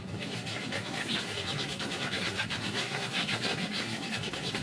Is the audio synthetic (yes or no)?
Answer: yes